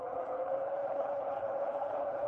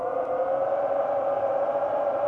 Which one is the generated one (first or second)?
first